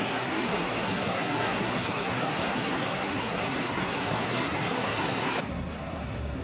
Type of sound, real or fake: fake